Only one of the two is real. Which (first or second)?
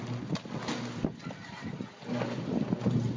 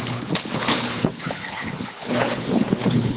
first